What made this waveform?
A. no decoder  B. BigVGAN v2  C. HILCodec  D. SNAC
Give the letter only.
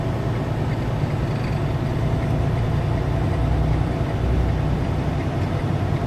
A